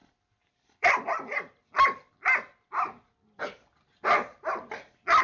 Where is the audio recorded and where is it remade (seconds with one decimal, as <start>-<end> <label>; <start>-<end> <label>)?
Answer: 0.0-2.1 remade; 2.1-5.2 recorded